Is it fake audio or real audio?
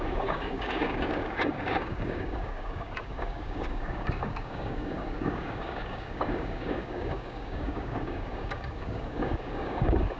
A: fake